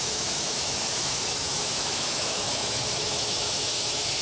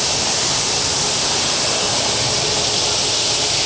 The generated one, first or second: first